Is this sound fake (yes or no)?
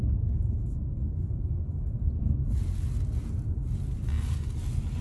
no